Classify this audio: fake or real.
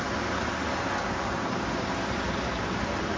real